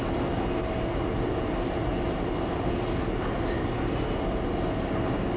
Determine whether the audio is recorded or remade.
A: recorded